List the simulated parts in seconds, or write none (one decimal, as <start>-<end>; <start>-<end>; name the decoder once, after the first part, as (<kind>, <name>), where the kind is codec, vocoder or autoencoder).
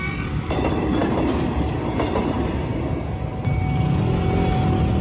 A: none